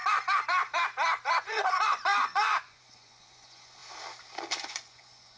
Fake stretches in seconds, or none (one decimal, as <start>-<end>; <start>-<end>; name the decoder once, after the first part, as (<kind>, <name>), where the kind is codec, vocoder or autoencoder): 1.3-3.8 (vocoder, Vocos); 4.6-5.4